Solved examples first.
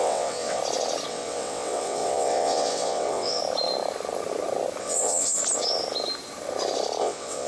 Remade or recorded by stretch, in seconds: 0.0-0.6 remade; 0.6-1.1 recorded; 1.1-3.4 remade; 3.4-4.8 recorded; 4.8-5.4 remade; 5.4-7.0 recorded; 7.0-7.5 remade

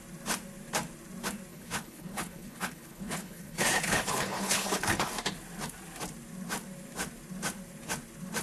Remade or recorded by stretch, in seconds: 0.0-1.5 recorded; 1.5-5.1 remade; 5.1-8.4 recorded

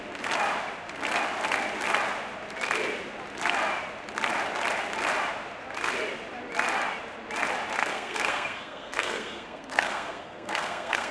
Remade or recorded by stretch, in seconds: 0.0-7.8 recorded; 7.8-11.1 remade

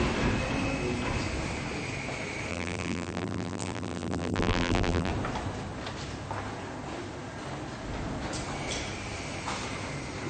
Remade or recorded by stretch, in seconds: 0.0-2.5 recorded; 2.5-5.1 remade; 5.1-10.3 recorded

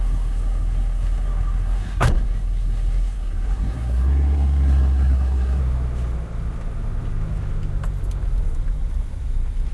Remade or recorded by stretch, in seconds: 0.0-5.6 remade; 5.6-9.7 recorded

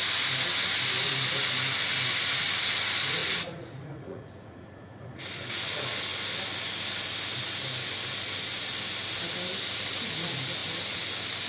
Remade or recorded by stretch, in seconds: 0.0-3.2 recorded; 3.2-5.2 remade; 5.2-11.5 recorded